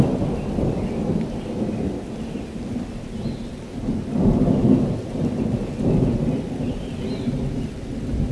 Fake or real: real